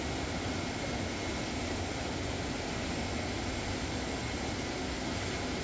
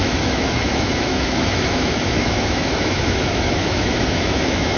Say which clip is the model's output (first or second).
second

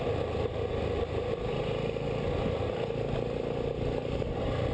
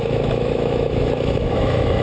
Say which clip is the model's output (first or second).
second